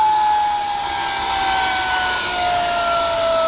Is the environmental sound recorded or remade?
recorded